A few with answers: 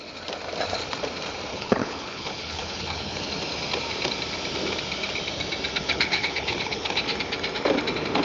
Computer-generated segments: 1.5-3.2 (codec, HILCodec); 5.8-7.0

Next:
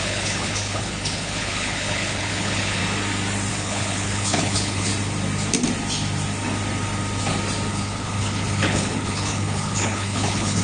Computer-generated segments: 0.0-2.8 (codec, HILCodec); 3.5-4.9; 7.7-10.6

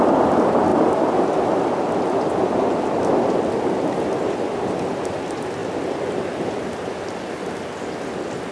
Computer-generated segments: none

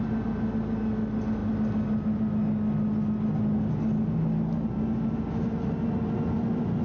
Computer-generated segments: none

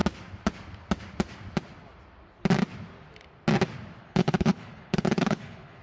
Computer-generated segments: 4.0-5.8 (codec, HILCodec)